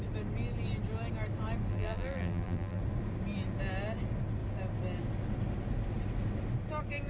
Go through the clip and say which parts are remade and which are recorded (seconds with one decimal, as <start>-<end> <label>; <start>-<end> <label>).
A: 0.0-1.7 recorded; 1.7-2.8 remade; 2.8-7.1 recorded